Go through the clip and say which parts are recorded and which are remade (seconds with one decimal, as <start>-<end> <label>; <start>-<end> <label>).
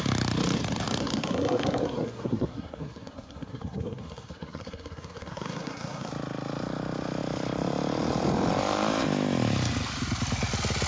0.0-1.0 recorded; 1.0-6.1 remade; 6.1-10.9 recorded